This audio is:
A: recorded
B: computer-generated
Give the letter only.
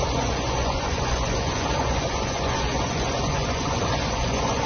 B